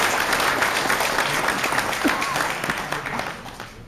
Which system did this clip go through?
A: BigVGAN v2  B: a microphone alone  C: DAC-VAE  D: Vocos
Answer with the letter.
B